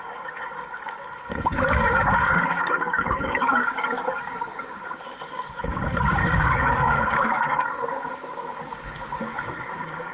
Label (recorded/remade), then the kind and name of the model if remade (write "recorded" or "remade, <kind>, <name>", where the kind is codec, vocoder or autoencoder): remade, codec, DAC